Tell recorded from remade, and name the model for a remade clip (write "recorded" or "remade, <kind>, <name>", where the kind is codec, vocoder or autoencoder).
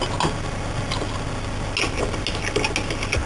recorded